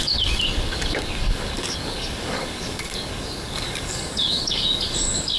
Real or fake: fake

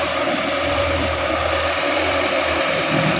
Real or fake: fake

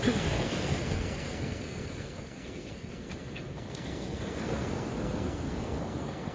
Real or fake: fake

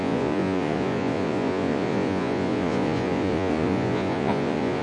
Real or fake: fake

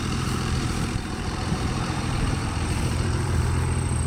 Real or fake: fake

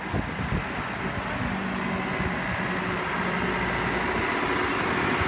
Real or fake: real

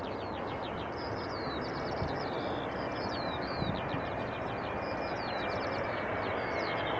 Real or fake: real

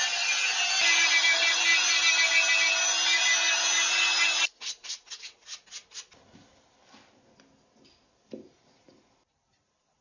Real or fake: real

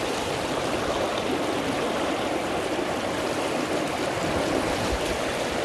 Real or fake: real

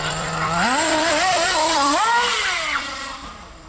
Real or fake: fake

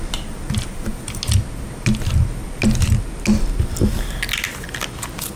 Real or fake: real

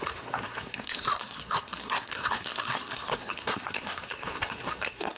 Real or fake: fake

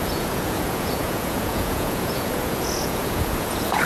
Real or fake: fake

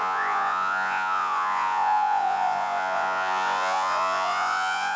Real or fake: fake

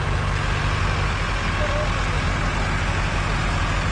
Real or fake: real